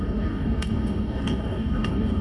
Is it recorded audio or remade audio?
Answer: remade